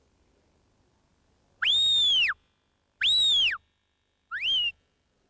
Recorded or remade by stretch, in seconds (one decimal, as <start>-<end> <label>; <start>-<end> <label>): 0.0-5.3 recorded